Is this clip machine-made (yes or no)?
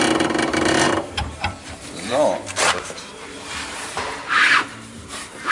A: yes